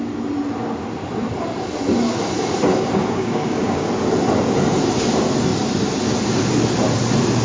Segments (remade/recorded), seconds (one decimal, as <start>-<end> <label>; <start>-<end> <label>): 0.0-3.0 recorded; 3.0-3.9 remade; 3.9-7.4 recorded